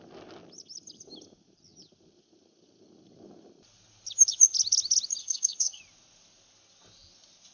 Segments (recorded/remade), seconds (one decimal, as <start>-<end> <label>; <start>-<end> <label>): 0.0-5.2 recorded; 5.2-5.8 remade; 5.8-7.5 recorded